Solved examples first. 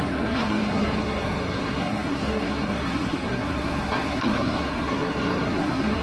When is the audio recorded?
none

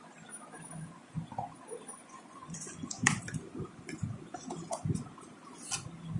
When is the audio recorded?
0.0-1.9; 3.2-6.2

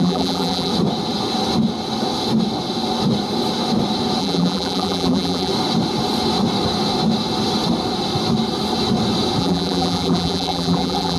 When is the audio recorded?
0.7-4.2; 5.5-9.4